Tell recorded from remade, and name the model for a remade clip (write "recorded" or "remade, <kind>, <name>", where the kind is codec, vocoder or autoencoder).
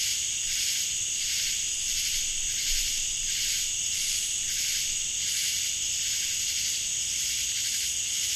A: recorded